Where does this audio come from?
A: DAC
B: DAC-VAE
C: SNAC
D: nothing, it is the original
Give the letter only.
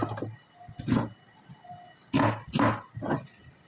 D